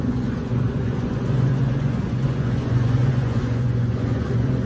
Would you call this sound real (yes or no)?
no